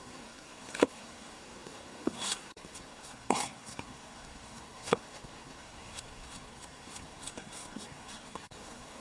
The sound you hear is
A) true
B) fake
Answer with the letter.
B